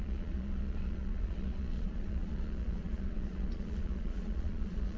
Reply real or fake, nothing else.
fake